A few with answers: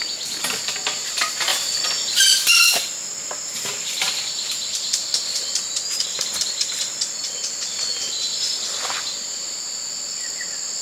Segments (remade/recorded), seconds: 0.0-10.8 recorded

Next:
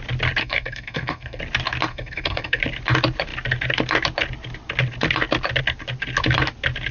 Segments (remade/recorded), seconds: 0.0-0.4 recorded; 0.4-1.4 remade; 1.4-1.9 recorded; 1.9-2.6 remade; 2.6-6.9 recorded

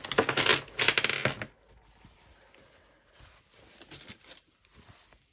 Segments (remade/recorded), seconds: 0.0-5.3 recorded